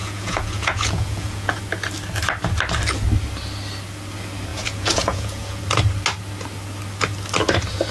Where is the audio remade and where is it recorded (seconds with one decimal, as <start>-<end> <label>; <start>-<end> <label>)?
0.0-1.6 remade; 1.6-4.5 recorded; 4.5-5.6 remade; 5.6-7.9 recorded